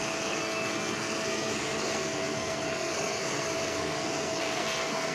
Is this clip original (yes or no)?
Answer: no